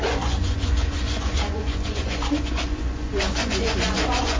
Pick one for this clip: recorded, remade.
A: remade